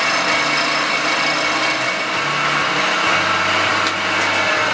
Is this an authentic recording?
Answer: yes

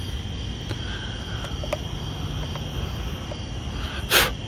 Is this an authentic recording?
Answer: yes